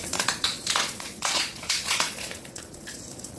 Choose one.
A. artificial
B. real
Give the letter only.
A